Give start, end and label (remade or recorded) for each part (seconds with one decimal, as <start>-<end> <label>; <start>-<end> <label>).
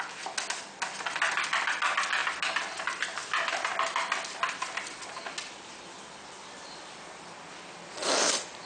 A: 0.0-8.7 recorded